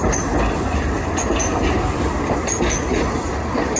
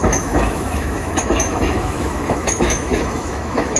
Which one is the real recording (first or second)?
first